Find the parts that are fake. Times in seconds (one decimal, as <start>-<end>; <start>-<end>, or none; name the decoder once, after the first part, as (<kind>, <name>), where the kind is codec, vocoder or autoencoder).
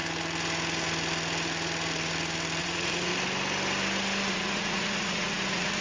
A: 2.6-3.1 (vocoder, Vocos); 4.3-5.8